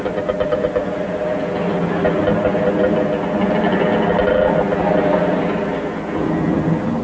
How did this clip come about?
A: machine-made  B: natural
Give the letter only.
B